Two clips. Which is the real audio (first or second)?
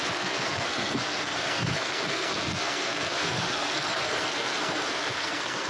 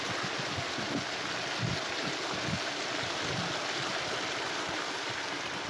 second